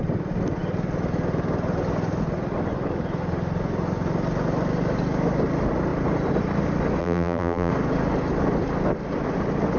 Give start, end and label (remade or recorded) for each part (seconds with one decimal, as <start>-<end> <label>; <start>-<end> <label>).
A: 0.0-7.0 recorded; 7.0-7.7 remade; 7.7-9.8 recorded